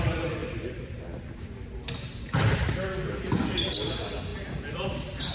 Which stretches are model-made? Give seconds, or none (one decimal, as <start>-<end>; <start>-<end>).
none